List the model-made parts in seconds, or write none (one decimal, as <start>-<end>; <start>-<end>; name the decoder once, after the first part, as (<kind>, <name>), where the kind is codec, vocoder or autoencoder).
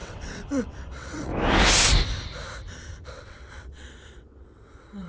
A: 0.0-1.3 (vocoder, WaveNeXt); 3.1-5.1